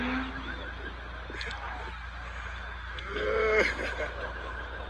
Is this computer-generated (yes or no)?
no